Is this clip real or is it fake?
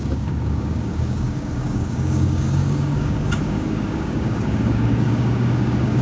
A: fake